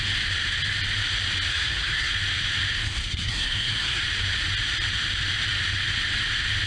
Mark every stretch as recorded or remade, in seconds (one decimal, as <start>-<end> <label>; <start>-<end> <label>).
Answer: 0.0-1.5 recorded; 1.5-2.1 remade; 2.1-3.0 recorded; 3.0-4.0 remade; 4.0-6.7 recorded